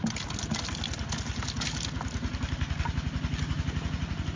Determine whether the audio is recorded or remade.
recorded